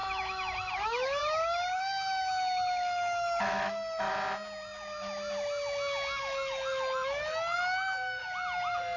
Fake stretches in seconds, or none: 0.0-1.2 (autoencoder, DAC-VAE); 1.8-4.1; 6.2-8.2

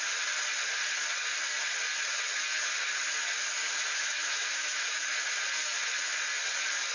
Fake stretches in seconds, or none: 3.6-5.2 (autoencoder, DAC-VAE)

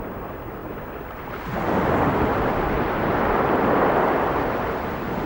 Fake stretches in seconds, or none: none

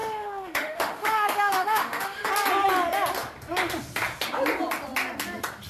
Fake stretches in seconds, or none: 0.0-2.3 (autoencoder, DAC-VAE)

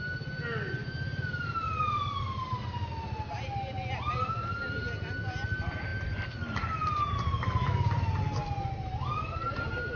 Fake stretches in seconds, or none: none

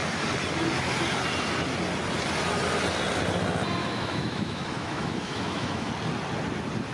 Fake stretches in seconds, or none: 3.8-5.9 (autoencoder, DAC-VAE)